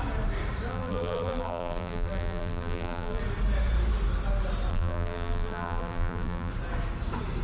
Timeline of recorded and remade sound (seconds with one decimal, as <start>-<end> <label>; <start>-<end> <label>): 0.0-0.7 recorded; 0.7-3.2 remade; 3.2-4.7 recorded; 4.7-6.5 remade; 6.5-7.4 recorded